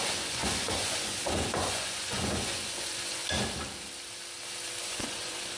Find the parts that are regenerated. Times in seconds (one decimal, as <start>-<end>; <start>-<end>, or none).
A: 0.0-3.2; 4.8-5.6